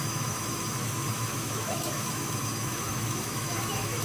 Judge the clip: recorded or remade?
remade